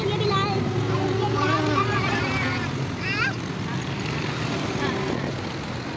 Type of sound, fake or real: real